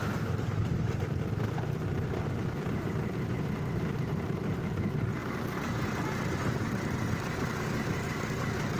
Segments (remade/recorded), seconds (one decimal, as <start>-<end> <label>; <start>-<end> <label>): 0.0-5.2 remade; 5.2-7.1 recorded; 7.1-8.8 remade